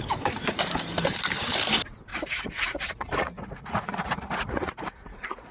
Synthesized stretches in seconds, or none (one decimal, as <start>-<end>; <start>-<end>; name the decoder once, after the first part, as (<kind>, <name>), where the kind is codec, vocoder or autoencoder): 2.1-5.5 (vocoder, Vocos)